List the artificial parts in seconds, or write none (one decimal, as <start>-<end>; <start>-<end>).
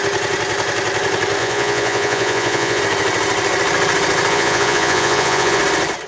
1.4-2.8; 4.3-5.6